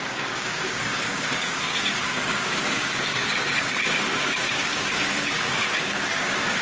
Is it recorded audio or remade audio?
remade